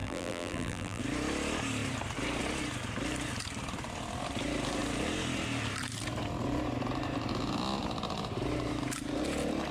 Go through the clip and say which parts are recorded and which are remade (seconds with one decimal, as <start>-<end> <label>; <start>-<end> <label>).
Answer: 0.0-1.0 remade; 1.0-9.7 recorded